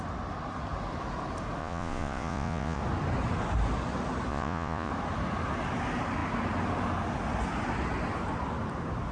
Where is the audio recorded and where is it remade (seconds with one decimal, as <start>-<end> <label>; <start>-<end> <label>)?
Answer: 0.0-1.6 recorded; 1.6-2.8 remade; 2.8-4.3 recorded; 4.3-4.9 remade; 4.9-9.1 recorded